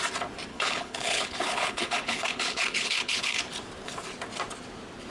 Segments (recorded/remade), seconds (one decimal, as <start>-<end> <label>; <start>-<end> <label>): 0.0-0.5 recorded; 0.5-3.4 remade; 3.4-5.1 recorded